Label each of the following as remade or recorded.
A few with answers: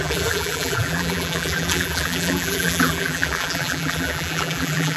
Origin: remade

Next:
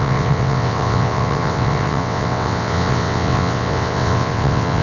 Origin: remade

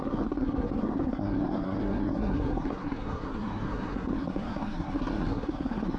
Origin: remade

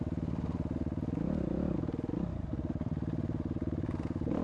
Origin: recorded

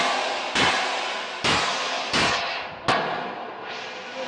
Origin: recorded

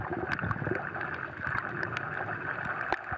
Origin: recorded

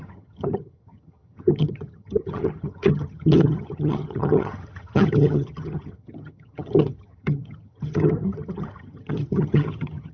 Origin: remade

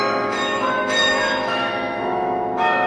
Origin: remade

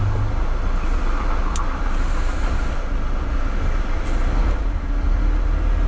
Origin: recorded